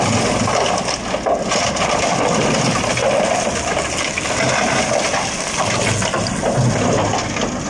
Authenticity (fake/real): real